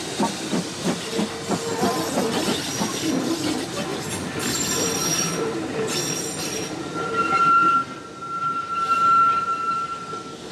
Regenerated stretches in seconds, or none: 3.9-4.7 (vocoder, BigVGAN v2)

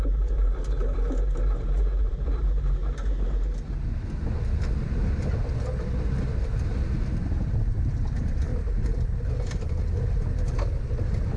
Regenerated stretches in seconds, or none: 0.0-0.9 (vocoder, BigVGAN v2); 2.0-2.8; 6.3-8.5; 11.0-11.4